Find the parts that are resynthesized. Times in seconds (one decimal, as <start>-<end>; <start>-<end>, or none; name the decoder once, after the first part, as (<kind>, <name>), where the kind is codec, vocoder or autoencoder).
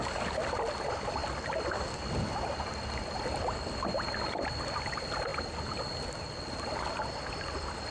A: none